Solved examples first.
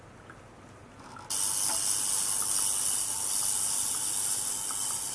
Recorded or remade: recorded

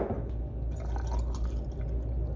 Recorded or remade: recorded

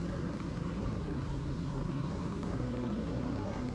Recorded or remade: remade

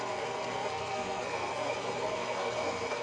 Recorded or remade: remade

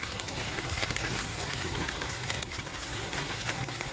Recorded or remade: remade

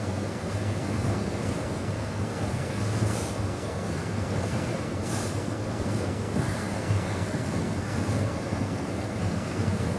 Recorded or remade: remade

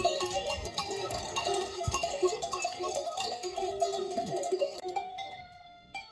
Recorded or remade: remade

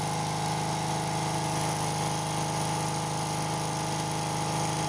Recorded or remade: recorded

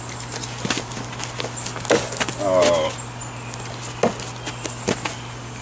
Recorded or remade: recorded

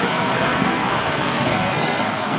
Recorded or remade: remade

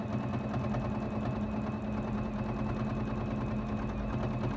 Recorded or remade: recorded